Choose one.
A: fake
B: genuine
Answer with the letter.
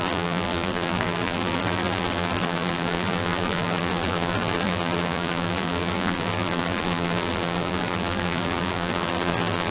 A